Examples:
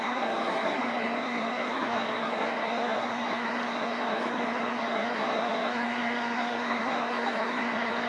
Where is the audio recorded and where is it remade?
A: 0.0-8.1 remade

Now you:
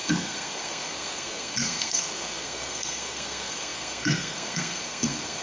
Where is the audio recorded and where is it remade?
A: 0.0-5.4 remade

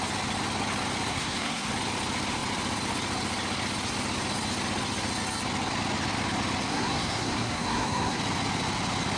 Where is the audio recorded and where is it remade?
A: 0.0-1.1 recorded; 1.1-1.7 remade; 1.7-6.7 recorded; 6.7-8.2 remade; 8.2-9.2 recorded

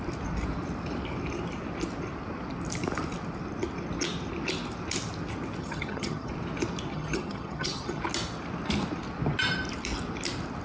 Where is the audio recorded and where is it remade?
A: 0.0-5.6 recorded; 5.6-6.3 remade; 6.3-6.9 recorded; 6.9-8.0 remade; 8.0-10.6 recorded

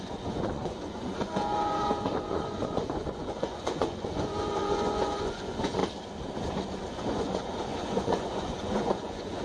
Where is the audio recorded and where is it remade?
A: 0.0-5.8 remade; 5.8-6.9 recorded; 6.9-9.4 remade

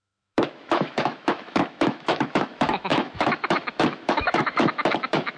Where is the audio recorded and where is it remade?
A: 0.0-5.4 remade

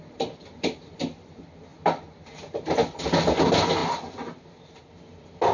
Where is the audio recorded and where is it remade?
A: 0.0-5.5 recorded